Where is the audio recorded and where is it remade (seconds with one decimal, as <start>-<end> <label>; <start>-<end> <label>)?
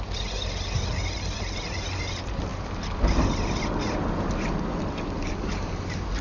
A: 0.0-6.2 recorded